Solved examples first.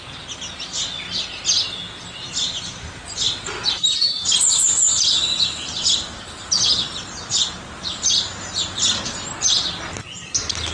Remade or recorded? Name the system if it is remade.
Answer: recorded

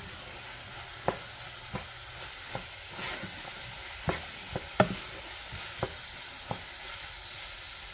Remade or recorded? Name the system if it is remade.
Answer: recorded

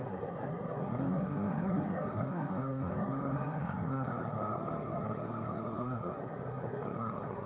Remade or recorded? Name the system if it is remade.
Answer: remade, codec, SNAC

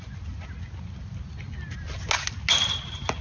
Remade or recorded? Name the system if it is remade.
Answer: recorded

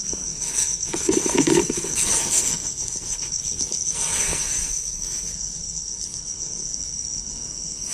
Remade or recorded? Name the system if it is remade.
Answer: remade, codec, SNAC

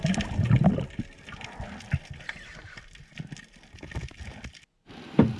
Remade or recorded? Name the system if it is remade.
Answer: recorded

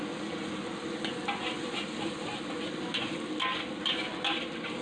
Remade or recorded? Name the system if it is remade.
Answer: recorded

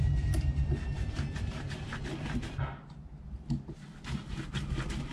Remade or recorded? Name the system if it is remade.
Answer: recorded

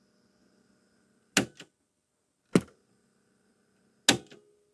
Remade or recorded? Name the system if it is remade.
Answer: recorded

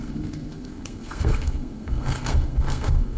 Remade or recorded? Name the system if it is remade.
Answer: remade, codec, SNAC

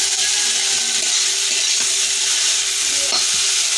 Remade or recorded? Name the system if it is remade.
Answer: recorded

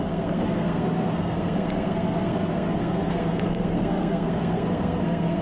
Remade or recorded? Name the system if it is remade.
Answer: remade, codec, SNAC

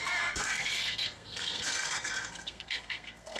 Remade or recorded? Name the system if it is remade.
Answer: remade, codec, SNAC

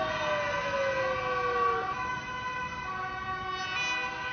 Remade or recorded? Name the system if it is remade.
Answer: recorded